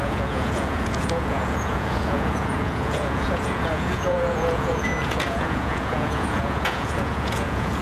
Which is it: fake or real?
fake